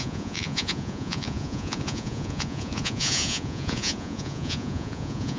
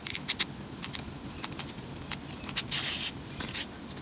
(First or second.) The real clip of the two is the second